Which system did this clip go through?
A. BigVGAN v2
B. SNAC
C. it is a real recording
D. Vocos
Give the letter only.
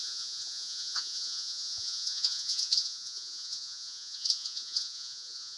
D